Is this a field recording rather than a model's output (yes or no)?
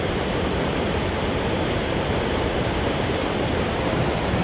no